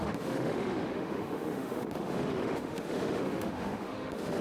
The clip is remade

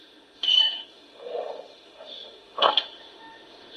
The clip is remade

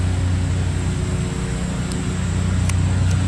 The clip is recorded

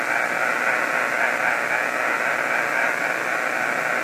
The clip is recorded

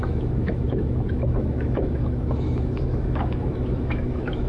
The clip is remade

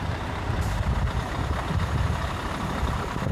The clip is recorded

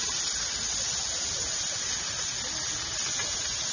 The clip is recorded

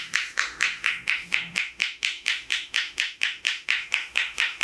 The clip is remade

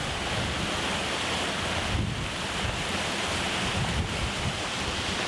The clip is recorded